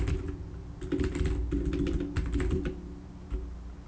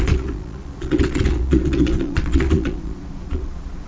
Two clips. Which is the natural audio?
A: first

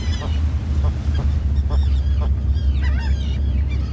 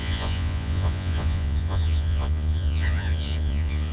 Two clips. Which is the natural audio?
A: first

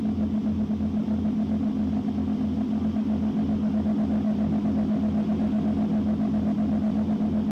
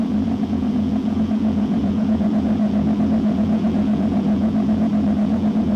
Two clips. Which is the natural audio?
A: first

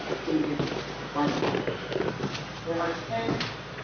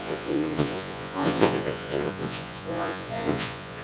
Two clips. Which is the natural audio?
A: first